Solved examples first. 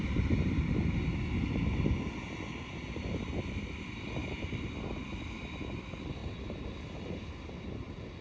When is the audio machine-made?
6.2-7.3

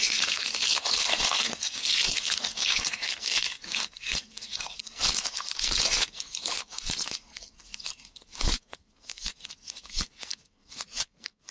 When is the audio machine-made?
0.0-11.5

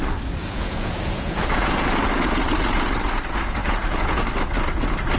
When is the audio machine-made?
0.4-1.8; 3.6-4.2

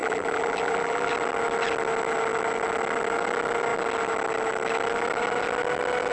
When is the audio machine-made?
0.0-1.1

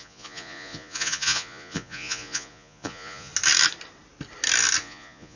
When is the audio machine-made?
0.0-3.3; 4.8-5.4